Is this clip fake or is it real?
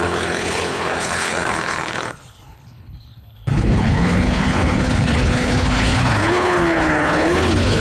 fake